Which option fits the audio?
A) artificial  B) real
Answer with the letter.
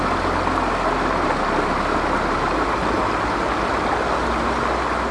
B